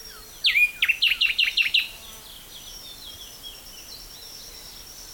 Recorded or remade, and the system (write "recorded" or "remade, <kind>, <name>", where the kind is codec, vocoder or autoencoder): recorded